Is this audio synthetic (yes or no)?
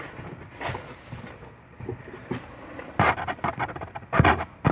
yes